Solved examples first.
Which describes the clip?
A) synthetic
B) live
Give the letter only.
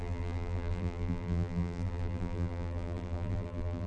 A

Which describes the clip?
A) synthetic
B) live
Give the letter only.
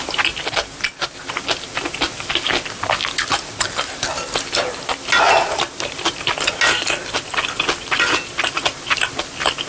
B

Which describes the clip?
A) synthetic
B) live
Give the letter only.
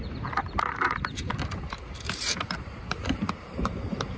A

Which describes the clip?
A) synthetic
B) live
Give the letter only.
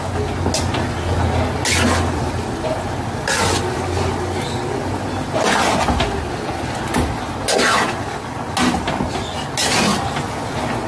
B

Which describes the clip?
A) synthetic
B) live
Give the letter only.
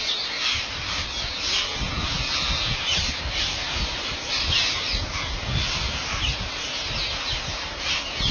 B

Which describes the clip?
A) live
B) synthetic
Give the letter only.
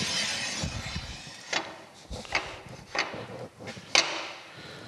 A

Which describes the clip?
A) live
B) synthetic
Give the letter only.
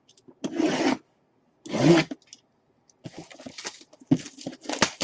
A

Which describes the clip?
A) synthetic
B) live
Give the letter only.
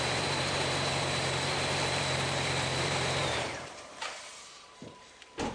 A